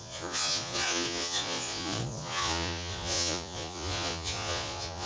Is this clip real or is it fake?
fake